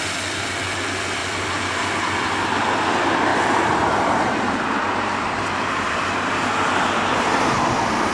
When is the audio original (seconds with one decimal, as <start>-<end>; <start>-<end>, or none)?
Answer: 0.0-3.3